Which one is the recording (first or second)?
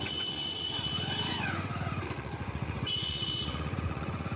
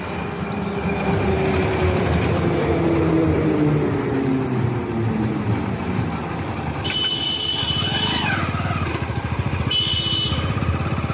second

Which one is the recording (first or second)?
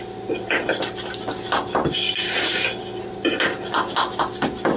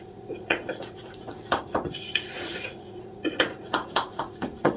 first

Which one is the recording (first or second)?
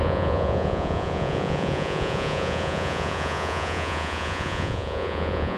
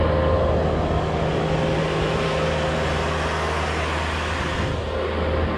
second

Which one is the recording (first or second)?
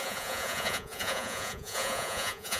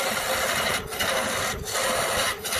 second